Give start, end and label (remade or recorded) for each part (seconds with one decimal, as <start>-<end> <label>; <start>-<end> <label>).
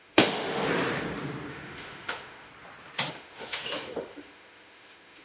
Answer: 0.0-0.6 remade; 0.6-1.5 recorded; 1.5-2.5 remade; 2.5-3.1 recorded; 3.1-5.2 remade